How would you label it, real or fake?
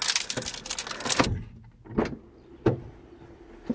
real